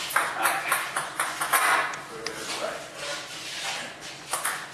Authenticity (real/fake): fake